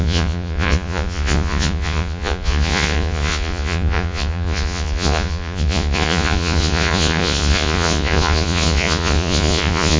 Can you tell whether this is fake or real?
fake